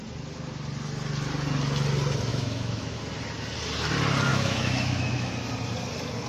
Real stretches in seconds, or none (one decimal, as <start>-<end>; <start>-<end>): 0.0-2.3; 3.0-4.3; 5.3-6.3

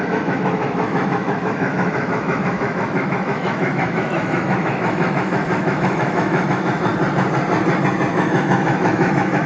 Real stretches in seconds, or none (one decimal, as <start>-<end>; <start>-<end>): 6.9-8.1

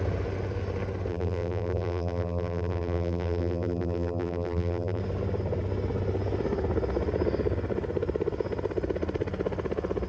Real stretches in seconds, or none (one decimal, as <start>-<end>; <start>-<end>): 0.0-1.1; 5.0-10.1

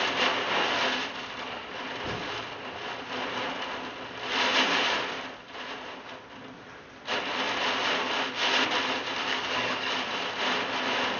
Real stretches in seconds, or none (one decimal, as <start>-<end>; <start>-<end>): 0.0-9.3; 9.9-11.2

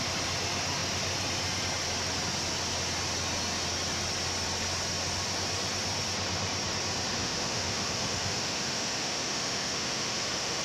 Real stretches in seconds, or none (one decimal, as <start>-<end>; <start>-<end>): 0.0-7.2

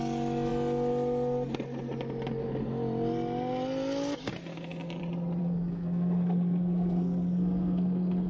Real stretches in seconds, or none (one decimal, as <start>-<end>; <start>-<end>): 0.0-5.4